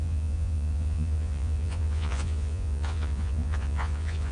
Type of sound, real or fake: fake